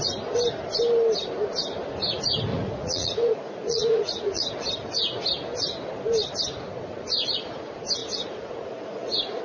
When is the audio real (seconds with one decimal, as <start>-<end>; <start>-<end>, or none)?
0.0-2.5; 4.5-8.0